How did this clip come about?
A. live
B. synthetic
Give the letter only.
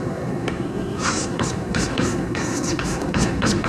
B